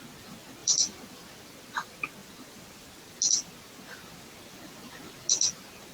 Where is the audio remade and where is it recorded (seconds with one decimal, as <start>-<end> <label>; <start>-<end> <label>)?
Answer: 0.0-0.6 recorded; 0.6-1.4 remade; 1.4-5.9 recorded

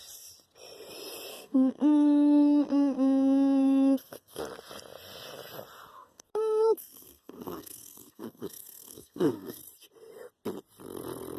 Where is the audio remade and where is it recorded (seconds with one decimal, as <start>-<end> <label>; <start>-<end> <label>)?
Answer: 0.0-1.3 recorded; 1.3-4.4 remade; 4.4-5.9 recorded; 5.9-9.6 remade; 9.6-11.4 recorded

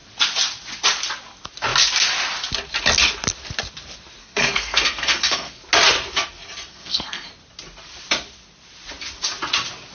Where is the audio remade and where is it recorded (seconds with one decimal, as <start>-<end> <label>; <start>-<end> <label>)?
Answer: 0.0-4.2 recorded; 4.2-5.6 remade; 5.6-6.7 recorded; 6.7-7.3 remade; 7.3-9.9 recorded

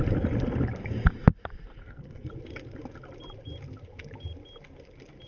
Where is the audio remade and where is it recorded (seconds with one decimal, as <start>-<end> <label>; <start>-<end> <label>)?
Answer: 0.0-1.8 recorded; 1.8-2.3 remade; 2.3-5.3 recorded

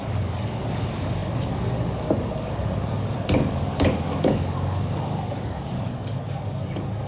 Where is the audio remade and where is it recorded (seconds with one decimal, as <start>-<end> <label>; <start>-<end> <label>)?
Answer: 0.0-7.1 remade

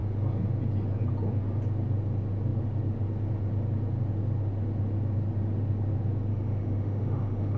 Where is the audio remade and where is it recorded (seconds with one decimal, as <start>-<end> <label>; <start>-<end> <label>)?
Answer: 0.0-6.3 recorded; 6.3-7.6 remade